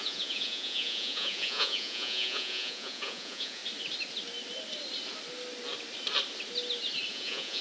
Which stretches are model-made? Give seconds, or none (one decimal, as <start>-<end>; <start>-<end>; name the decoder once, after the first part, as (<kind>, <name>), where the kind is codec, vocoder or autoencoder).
0.0-3.6 (vocoder, Vocos); 7.1-7.6